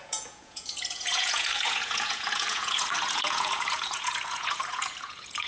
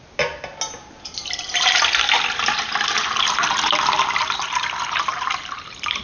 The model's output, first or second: first